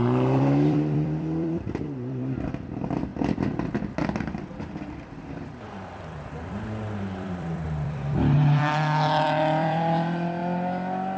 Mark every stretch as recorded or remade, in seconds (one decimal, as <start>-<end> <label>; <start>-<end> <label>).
0.0-3.1 remade; 3.1-4.2 recorded; 4.2-10.4 remade; 10.4-11.2 recorded